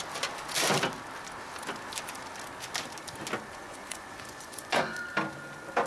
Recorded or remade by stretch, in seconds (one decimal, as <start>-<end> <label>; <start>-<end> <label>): 0.0-3.5 recorded; 3.5-5.0 remade; 5.0-5.9 recorded